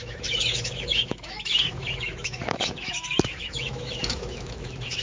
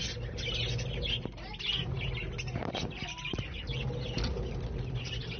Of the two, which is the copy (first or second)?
first